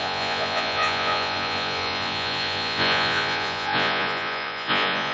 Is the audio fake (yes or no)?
yes